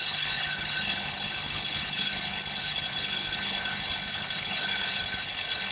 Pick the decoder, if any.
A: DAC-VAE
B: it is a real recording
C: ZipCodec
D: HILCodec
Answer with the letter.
D